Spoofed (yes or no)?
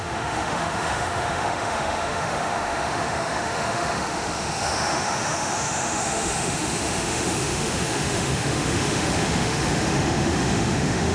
yes